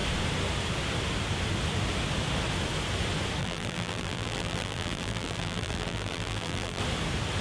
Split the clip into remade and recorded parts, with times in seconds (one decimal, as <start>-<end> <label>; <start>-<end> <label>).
0.0-3.4 recorded; 3.4-6.8 remade; 6.8-7.4 recorded